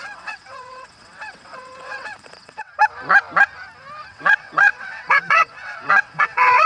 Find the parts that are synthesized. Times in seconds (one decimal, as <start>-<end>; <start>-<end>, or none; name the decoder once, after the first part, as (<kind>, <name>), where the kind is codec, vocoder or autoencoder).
0.0-2.7 (vocoder, WaveNeXt); 4.1-6.7